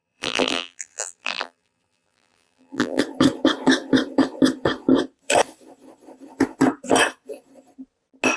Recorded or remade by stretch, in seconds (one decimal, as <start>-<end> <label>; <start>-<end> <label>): 0.0-3.0 remade; 3.0-8.4 recorded